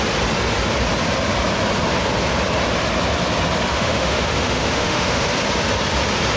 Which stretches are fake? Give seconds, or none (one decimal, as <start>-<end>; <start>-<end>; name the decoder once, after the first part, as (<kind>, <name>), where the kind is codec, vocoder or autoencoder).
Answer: 3.7-5.3 (autoencoder, DAC-VAE)